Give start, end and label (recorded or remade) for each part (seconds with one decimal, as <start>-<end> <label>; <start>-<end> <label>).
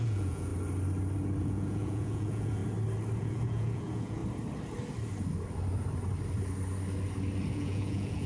0.0-0.5 remade; 0.5-1.4 recorded; 1.4-2.6 remade; 2.6-3.2 recorded; 3.2-4.2 remade; 4.2-7.5 recorded; 7.5-8.3 remade